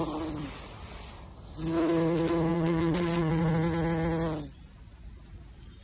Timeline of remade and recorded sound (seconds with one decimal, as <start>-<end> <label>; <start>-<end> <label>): 0.0-2.5 recorded; 2.5-3.4 remade; 3.4-5.8 recorded